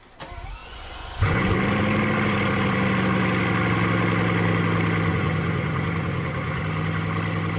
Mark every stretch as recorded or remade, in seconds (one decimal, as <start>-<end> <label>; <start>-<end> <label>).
0.0-0.6 recorded; 0.6-1.5 remade; 1.5-5.1 recorded; 5.1-6.6 remade; 6.6-7.6 recorded